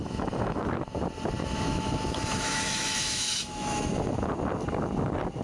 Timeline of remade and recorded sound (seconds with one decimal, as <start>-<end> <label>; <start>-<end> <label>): 0.0-0.6 remade; 0.6-1.4 recorded; 1.4-3.9 remade; 3.9-5.4 recorded